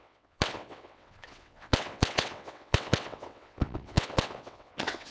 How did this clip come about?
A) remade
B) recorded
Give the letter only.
A